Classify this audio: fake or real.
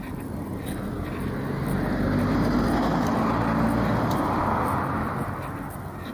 real